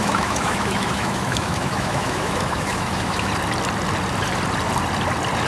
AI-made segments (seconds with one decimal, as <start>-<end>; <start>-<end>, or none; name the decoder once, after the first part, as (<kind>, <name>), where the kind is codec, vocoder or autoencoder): 0.0-3.3 (autoencoder, DAC-VAE)